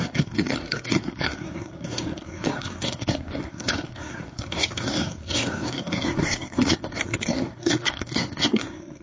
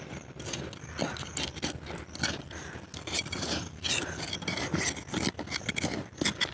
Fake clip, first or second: first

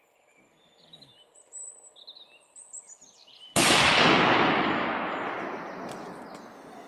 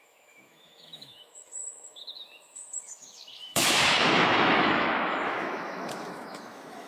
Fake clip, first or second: second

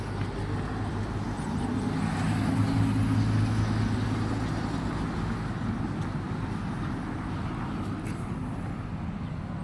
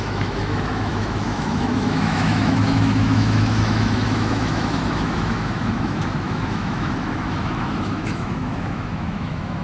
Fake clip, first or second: second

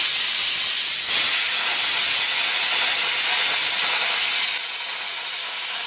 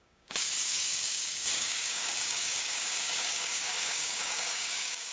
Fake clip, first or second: second